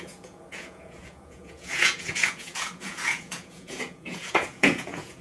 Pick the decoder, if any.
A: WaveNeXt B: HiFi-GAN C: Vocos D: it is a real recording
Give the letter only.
C